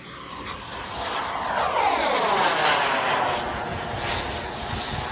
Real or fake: real